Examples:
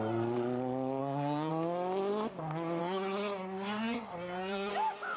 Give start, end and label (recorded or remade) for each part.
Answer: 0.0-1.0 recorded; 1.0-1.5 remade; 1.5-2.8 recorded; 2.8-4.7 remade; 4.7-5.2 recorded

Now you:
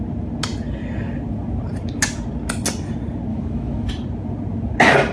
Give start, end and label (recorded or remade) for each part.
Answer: 0.0-3.3 recorded; 3.3-3.9 remade; 3.9-5.1 recorded

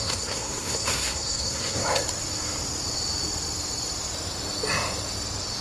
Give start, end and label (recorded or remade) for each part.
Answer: 0.0-1.8 remade; 1.8-5.6 recorded

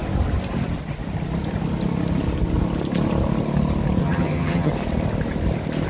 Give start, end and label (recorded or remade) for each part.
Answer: 0.0-4.0 recorded; 4.0-4.7 remade; 4.7-5.9 recorded

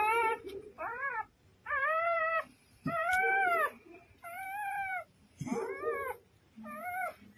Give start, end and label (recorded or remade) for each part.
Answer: 0.0-7.4 remade

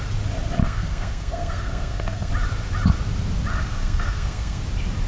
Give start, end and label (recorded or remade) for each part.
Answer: 0.0-0.6 recorded; 0.6-2.3 remade; 2.3-3.5 recorded; 3.5-4.6 remade; 4.6-5.1 recorded

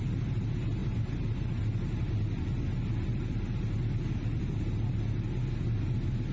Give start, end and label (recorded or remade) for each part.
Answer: 0.0-6.3 recorded